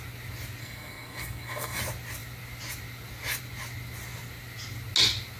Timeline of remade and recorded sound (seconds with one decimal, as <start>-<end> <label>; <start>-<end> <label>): 0.0-0.6 recorded; 0.6-1.8 remade; 1.8-5.4 recorded